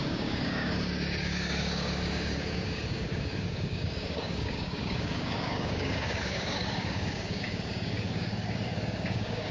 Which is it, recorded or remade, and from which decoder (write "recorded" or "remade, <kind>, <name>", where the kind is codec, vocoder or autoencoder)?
remade, codec, DAC